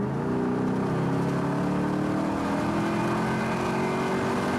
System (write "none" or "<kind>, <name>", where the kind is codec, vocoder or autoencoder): none